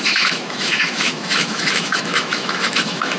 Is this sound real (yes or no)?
no